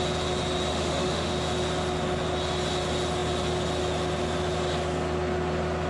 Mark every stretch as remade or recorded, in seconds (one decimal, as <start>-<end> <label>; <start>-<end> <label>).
0.0-0.7 recorded; 0.7-1.3 remade; 1.3-5.9 recorded